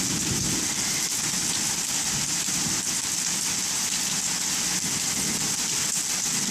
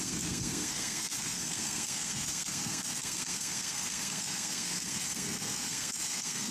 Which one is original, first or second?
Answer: first